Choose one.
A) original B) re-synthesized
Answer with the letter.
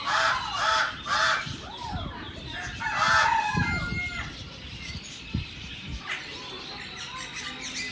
A